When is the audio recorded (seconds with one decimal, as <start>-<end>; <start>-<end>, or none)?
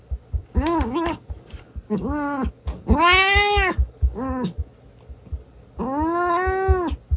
0.0-0.4; 4.7-7.2